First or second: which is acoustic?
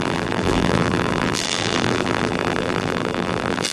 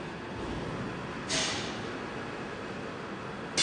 second